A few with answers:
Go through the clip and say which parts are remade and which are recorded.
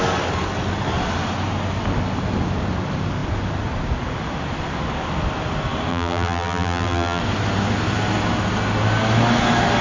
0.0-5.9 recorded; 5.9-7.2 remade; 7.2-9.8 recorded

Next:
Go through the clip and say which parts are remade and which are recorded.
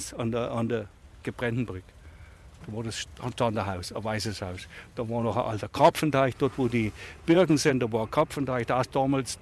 0.0-3.1 recorded; 3.1-7.7 remade; 7.7-9.4 recorded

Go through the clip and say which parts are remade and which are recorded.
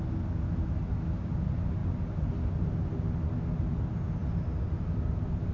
0.0-5.5 recorded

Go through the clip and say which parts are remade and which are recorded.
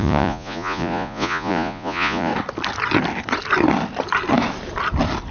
0.0-2.3 remade; 2.3-5.3 recorded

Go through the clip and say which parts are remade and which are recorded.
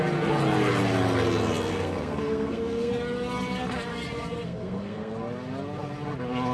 0.0-1.7 recorded; 1.7-2.9 remade; 2.9-3.9 recorded; 3.9-5.1 remade; 5.1-6.5 recorded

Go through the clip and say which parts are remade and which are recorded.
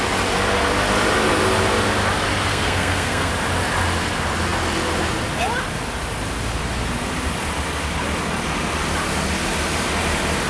0.0-2.5 recorded; 2.5-3.3 remade; 3.3-10.5 recorded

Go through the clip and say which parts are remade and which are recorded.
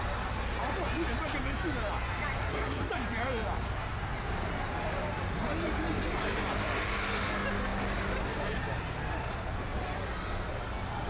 0.0-2.4 recorded; 2.4-2.9 remade; 2.9-11.1 recorded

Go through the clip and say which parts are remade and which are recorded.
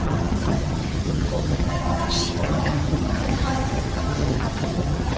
0.0-5.2 remade